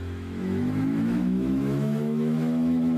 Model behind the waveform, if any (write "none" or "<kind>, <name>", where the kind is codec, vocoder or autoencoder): autoencoder, DAC-VAE